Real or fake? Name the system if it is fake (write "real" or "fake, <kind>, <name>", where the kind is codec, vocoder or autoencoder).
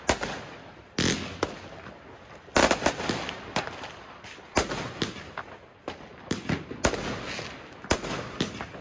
real